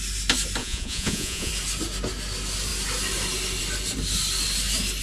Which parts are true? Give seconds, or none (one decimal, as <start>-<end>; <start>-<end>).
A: 0.0-0.6; 1.5-5.0